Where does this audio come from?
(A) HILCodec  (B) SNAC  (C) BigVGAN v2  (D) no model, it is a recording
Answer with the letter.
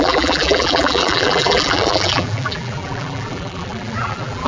C